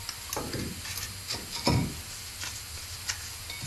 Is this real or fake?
real